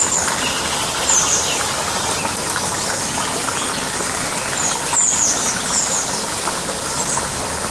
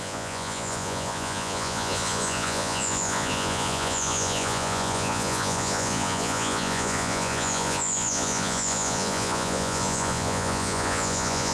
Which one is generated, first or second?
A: second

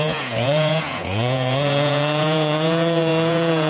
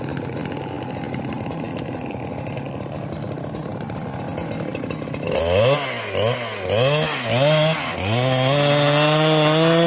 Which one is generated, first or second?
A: first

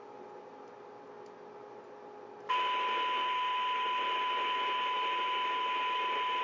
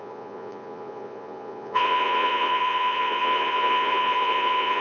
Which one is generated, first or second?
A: second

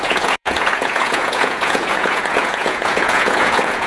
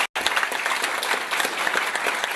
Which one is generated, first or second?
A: first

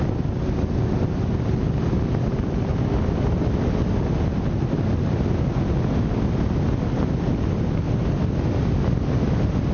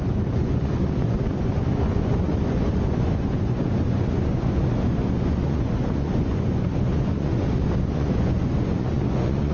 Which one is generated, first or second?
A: second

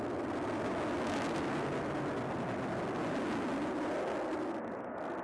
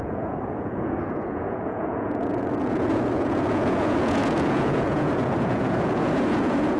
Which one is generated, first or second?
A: second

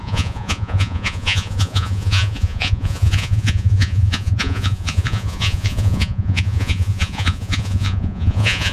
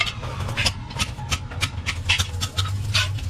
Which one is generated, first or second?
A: first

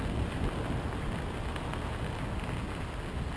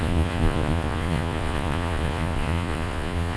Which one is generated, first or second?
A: second